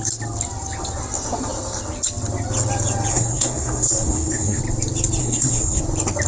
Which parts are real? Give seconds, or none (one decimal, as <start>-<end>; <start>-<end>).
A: 0.0-3.1; 4.6-5.2; 5.8-6.3